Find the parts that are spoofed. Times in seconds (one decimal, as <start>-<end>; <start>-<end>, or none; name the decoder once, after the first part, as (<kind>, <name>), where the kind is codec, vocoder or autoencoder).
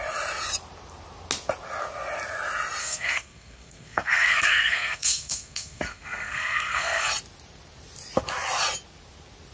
2.8-7.1 (codec, SNAC)